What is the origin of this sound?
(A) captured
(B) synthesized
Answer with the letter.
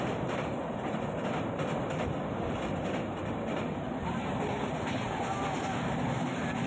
A